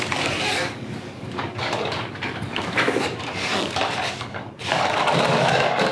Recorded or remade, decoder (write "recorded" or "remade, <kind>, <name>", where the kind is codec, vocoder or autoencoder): remade, codec, DAC